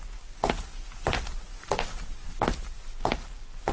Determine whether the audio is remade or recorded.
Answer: recorded